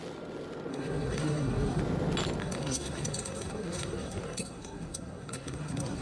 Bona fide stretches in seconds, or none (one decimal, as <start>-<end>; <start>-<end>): 0.0-0.7; 1.8-2.4